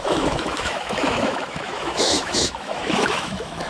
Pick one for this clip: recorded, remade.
remade